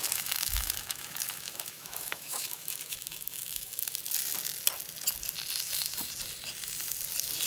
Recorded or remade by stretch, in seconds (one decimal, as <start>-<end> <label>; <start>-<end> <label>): 0.0-4.0 remade; 4.0-7.5 recorded